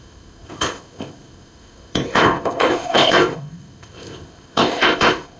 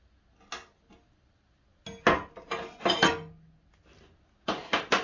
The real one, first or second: second